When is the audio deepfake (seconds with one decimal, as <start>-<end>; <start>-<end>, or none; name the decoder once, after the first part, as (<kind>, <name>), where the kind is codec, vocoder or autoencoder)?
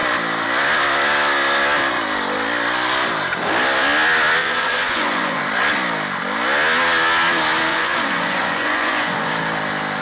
4.4-5.4 (vocoder, Vocos); 7.7-9.3